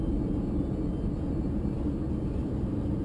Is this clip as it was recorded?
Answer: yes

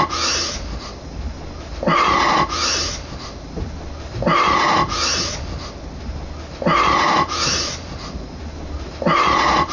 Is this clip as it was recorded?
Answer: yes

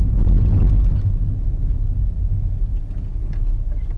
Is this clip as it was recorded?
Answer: yes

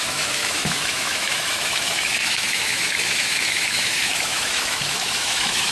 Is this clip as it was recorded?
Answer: no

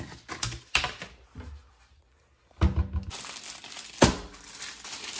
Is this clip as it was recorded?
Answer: yes